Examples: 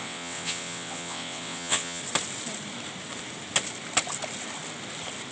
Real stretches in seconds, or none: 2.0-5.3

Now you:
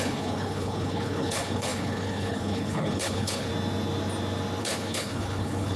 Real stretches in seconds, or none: 3.5-4.6

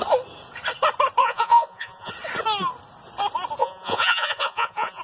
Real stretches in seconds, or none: 0.0-1.2; 2.1-3.6

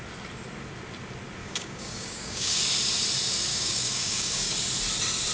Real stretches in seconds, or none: 0.0-1.4; 2.6-3.5; 4.6-5.3

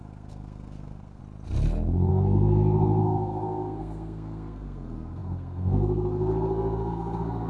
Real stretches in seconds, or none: 1.2-2.1

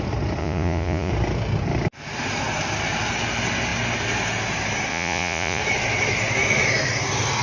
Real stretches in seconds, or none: 0.0-0.4; 1.1-4.9; 5.6-7.4

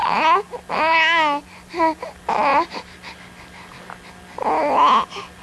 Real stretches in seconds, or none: 0.0-2.5; 3.7-5.4